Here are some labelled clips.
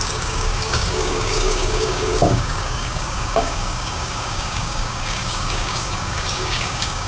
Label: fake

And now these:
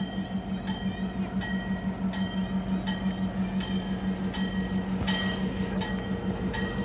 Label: real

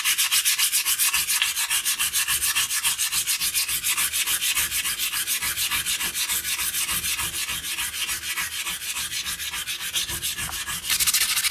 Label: real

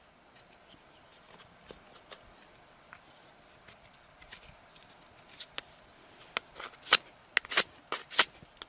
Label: real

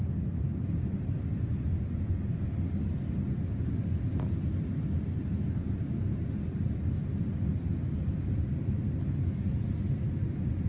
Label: real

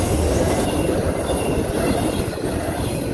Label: real